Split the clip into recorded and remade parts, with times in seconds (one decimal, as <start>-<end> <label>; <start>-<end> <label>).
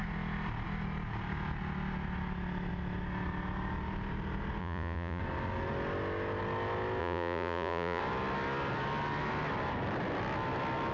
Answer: 0.0-4.6 recorded; 4.6-5.2 remade; 5.2-7.0 recorded; 7.0-8.0 remade; 8.0-10.9 recorded